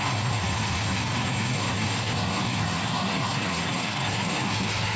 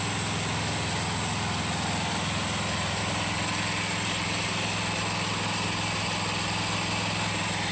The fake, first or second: first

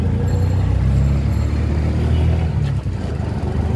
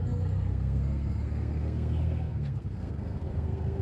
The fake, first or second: second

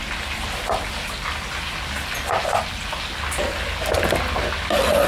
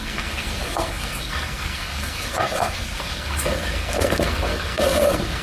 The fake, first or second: second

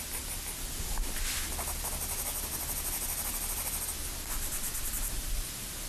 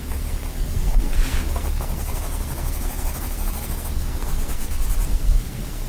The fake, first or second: second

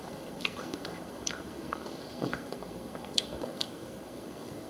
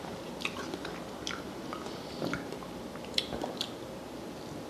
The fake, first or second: first